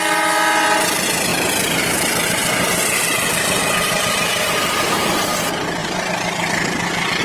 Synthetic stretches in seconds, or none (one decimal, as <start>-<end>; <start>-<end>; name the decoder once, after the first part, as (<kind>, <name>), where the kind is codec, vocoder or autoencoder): 1.3-1.8 (vocoder, BigVGAN v2); 5.8-7.2